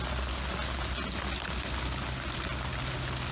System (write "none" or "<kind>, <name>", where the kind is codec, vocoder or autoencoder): none